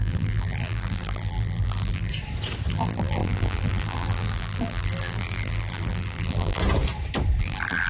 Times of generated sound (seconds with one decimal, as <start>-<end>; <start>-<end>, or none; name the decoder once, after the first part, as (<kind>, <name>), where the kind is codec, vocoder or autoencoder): 0.0-2.1 (vocoder, BigVGAN v2); 2.7-6.6; 7.4-7.9